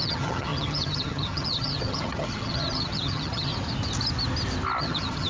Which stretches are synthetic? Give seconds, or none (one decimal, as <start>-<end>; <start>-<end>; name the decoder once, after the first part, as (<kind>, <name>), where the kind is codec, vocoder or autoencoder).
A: 0.0-3.5 (vocoder, HiFi-GAN); 4.8-5.3